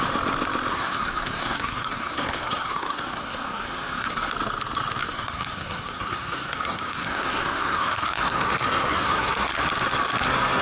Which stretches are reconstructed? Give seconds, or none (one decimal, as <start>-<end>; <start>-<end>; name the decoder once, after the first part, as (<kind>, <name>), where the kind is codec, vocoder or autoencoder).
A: 0.7-4.3 (codec, SNAC); 5.0-9.6